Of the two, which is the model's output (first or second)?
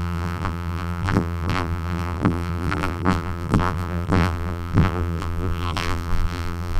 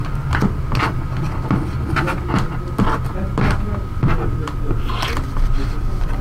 first